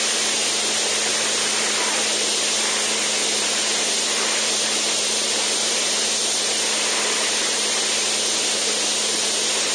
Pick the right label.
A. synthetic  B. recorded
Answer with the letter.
B